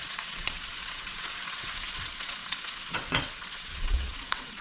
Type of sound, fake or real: fake